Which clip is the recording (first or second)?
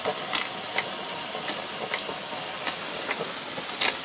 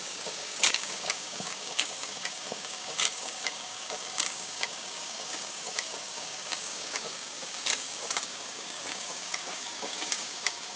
first